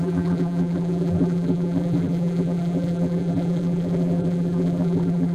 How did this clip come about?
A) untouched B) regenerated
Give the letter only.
B